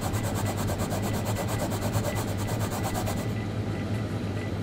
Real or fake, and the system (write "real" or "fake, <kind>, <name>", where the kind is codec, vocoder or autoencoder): real